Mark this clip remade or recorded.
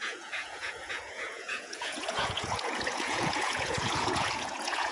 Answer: remade